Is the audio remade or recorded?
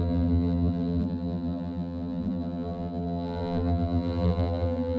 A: remade